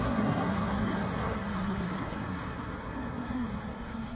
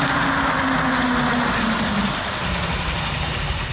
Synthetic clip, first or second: first